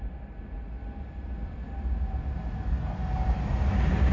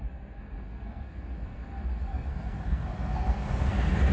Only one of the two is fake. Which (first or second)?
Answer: second